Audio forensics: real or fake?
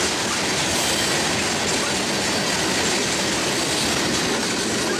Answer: real